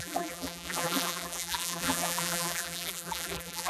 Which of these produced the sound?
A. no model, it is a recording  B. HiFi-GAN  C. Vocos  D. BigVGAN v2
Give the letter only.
D